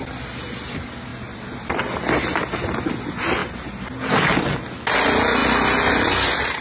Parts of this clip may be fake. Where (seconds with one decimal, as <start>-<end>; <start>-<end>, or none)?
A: none